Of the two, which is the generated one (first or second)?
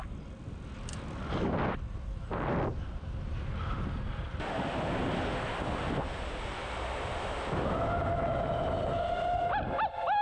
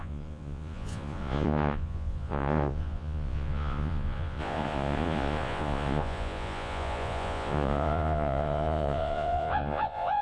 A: second